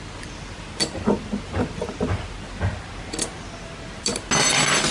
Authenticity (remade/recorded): recorded